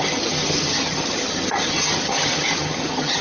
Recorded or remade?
remade